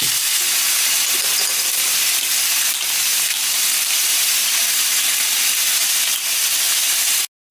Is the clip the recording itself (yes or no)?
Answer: yes